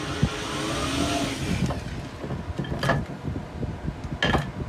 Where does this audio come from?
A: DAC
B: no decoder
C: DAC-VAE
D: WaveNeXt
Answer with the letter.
B